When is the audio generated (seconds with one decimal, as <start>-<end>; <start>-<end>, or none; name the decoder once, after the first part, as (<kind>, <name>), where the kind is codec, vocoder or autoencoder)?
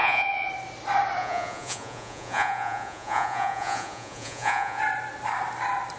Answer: 0.0-0.5 (vocoder, Vocos); 1.2-4.8